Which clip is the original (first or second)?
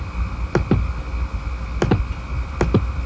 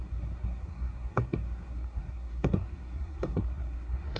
first